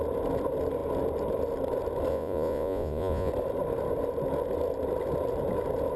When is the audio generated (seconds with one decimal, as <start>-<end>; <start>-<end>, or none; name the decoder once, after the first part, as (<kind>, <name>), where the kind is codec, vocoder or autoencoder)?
2.1-3.3 (vocoder, Vocos)